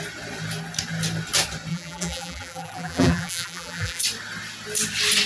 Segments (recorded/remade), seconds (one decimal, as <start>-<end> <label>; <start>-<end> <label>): 0.0-1.7 recorded; 1.7-4.0 remade; 4.0-5.3 recorded